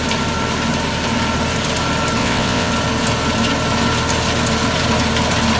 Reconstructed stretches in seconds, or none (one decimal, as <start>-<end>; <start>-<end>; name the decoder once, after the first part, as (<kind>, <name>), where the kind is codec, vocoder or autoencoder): 2.2-2.7 (vocoder, WaveNeXt)